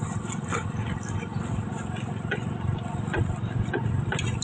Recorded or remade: recorded